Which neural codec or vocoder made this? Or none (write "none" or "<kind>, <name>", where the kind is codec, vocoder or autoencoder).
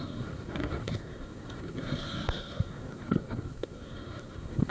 codec, SNAC